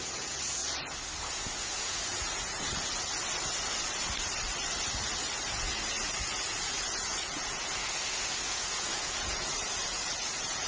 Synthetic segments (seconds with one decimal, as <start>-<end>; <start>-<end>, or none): 0.0-0.6; 1.2-2.7; 5.3-10.7